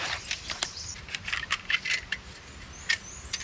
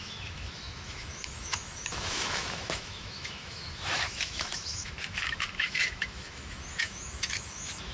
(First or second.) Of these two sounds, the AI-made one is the second